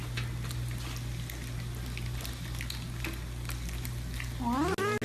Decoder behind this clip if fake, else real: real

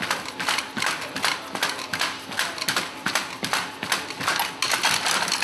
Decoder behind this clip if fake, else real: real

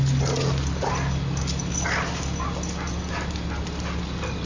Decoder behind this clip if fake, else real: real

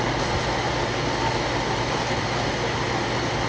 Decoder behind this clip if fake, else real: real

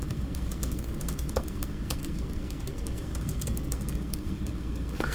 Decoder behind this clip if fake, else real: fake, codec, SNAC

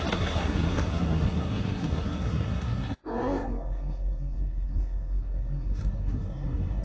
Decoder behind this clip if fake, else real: fake, codec, SNAC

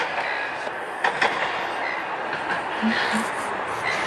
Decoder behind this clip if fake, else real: real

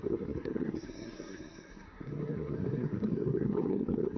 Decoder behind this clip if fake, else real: fake, codec, SNAC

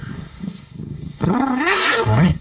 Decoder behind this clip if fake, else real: fake, codec, SNAC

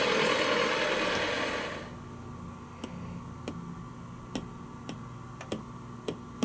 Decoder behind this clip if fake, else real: real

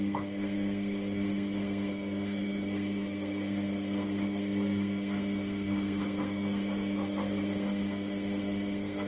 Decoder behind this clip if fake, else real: fake, codec, SNAC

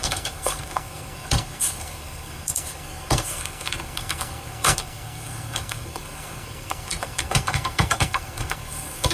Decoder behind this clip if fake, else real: fake, codec, SNAC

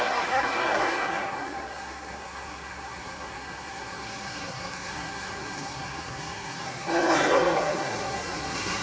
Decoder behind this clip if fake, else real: fake, codec, SNAC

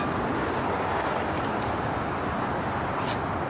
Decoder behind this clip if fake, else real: real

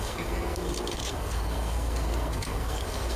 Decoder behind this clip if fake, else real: fake, codec, SNAC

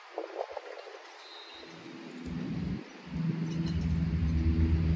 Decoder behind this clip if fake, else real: real